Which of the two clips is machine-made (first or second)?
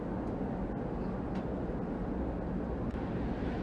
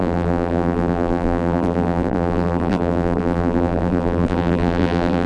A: second